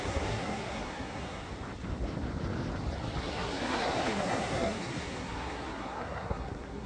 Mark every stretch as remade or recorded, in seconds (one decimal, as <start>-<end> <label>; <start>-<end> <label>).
0.0-1.4 remade; 1.4-3.2 recorded; 3.2-6.9 remade